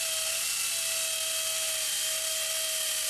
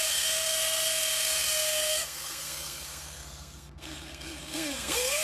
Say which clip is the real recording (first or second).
first